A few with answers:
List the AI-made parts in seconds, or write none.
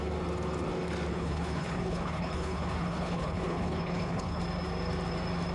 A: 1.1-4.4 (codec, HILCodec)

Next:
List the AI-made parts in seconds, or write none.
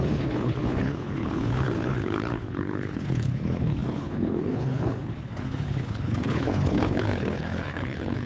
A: 0.0-8.3 (codec, HILCodec)